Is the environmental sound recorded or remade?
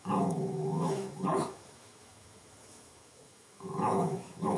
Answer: remade